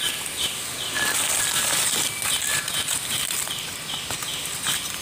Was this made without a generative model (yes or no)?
yes